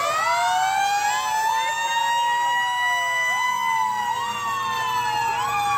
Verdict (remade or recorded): recorded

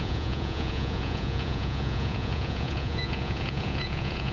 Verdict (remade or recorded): remade